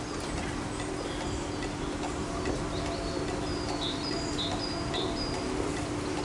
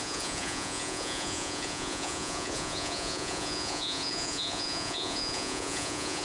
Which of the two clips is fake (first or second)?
second